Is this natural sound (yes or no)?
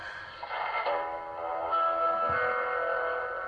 yes